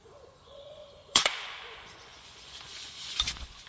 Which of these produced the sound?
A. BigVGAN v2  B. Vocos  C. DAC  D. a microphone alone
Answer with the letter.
B